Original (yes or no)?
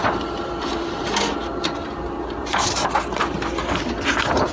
yes